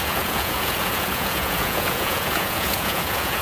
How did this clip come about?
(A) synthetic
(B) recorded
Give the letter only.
A